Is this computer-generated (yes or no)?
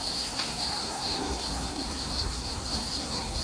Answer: yes